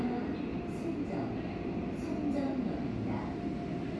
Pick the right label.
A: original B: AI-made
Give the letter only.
A